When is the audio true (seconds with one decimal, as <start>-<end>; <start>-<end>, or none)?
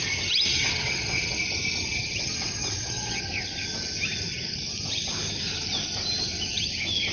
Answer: 0.0-0.5; 1.4-1.9; 3.2-7.1